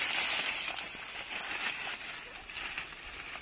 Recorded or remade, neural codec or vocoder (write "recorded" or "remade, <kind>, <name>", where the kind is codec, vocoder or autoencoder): recorded